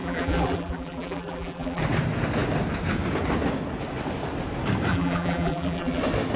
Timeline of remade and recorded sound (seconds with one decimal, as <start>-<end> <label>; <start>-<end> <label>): 0.0-1.8 remade; 1.8-4.9 recorded; 4.9-6.0 remade; 6.0-6.4 recorded